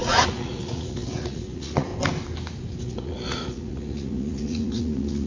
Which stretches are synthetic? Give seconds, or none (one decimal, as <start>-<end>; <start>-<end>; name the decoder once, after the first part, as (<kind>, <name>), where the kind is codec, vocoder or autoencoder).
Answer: 0.0-1.9 (vocoder, Vocos); 2.8-5.3